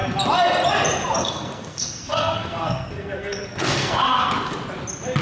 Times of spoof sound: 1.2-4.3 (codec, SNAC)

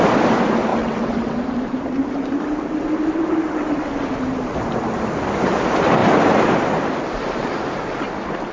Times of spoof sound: 0.7-1.4 (vocoder, WaveNeXt)

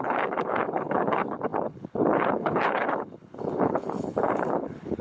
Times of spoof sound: 0.0-5.0 (codec, HILCodec)

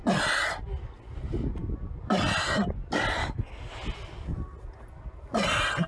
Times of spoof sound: 3.2-3.7 (codec, DAC)

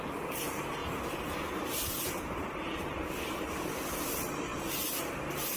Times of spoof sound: 0.8-3.8 (vocoder, BigVGAN v2)

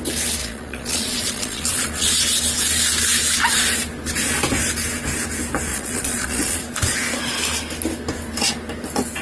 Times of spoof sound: 0.4-2.1 (vocoder, Vocos); 5.7-6.6

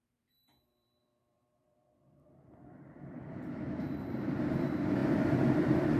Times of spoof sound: 0.0-6.0 (vocoder, BigVGAN v2)